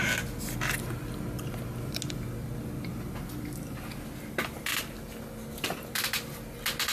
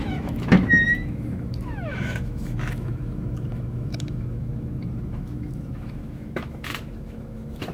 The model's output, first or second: second